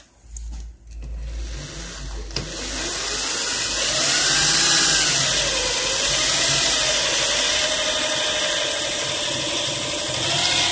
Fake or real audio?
real